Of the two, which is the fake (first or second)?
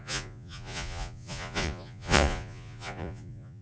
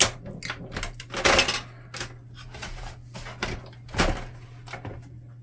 first